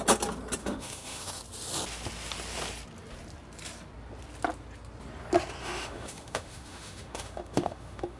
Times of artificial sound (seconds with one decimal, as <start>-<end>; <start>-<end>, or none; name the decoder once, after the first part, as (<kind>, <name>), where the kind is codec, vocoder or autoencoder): 0.6-1.4 (autoencoder, DAC-VAE); 5.6-8.2